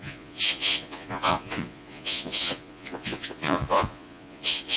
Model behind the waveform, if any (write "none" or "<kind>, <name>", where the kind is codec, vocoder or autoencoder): vocoder, Vocos